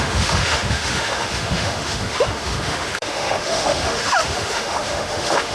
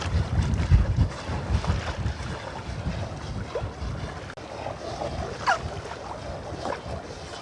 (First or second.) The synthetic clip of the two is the first